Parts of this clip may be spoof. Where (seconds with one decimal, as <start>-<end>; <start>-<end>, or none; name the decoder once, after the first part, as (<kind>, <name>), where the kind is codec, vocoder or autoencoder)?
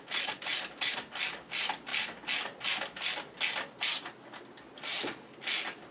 none